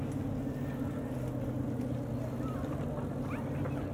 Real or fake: real